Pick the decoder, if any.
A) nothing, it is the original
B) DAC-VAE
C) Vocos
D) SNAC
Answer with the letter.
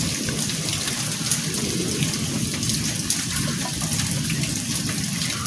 A